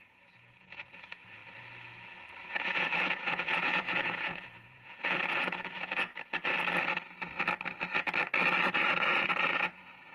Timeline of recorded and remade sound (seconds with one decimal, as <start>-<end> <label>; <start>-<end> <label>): 0.0-1.4 remade; 1.4-2.5 recorded; 2.5-6.1 remade; 6.1-8.7 recorded; 8.7-10.1 remade